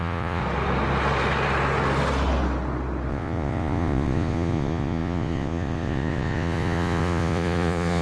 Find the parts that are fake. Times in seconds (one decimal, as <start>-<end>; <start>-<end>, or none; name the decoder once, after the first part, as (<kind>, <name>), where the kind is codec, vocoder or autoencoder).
0.0-0.4 (vocoder, Vocos); 3.1-8.0